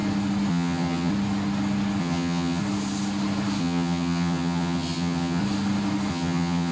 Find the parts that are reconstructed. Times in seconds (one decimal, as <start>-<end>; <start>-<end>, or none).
0.5-1.1; 2.0-2.6; 3.6-5.4; 6.1-6.7